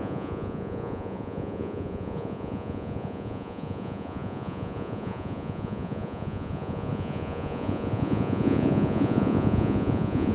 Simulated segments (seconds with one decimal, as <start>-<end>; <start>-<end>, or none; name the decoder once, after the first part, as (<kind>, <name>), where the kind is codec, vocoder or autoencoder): 0.0-10.3 (vocoder, Vocos)

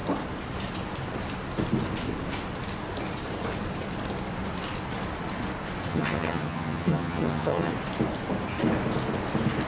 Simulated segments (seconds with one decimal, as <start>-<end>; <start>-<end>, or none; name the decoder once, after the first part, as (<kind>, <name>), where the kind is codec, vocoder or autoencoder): 5.9-7.7 (vocoder, HiFi-GAN)

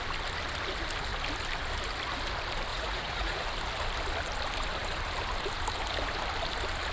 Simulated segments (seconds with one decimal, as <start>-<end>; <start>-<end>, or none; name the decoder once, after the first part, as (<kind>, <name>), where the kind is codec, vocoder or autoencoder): 2.7-3.4 (vocoder, Vocos)

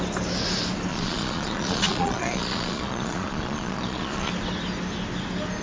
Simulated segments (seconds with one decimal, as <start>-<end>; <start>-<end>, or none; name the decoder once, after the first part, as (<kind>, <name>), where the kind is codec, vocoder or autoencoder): 0.9-4.3 (vocoder, Vocos)

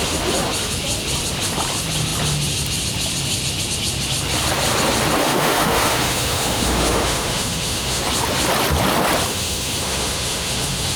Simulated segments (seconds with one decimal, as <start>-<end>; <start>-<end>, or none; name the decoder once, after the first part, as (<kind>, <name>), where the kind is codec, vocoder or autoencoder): 5.2-8.0 (autoencoder, DAC-VAE); 9.3-11.0

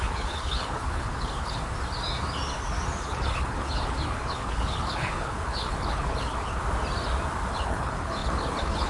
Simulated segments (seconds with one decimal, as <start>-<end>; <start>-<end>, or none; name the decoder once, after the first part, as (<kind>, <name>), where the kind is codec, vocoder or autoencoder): 0.0-1.6 (codec, HILCodec); 3.0-6.6; 7.5-8.9

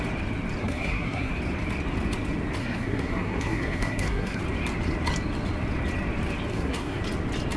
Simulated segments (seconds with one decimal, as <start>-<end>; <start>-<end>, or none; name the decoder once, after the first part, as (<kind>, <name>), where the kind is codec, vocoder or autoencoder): 0.6-1.3 (codec, SNAC); 2.6-4.4; 6.5-7.0